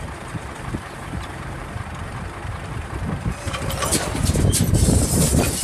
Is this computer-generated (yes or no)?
yes